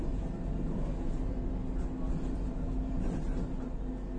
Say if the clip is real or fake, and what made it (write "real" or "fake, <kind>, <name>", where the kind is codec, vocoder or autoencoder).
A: real